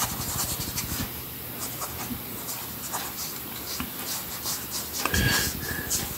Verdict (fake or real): real